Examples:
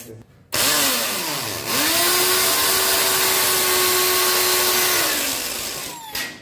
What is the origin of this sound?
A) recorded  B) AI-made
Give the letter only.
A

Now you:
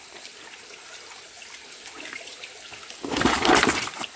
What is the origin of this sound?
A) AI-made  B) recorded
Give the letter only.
A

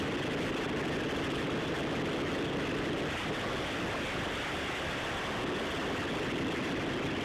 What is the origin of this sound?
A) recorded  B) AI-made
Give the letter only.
A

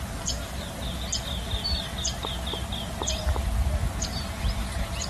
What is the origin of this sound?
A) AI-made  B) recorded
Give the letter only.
B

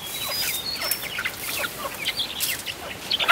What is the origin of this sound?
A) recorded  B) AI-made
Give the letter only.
A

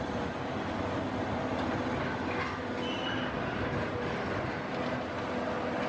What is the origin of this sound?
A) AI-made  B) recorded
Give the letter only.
B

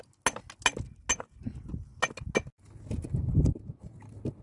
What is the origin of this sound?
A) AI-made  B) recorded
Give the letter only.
B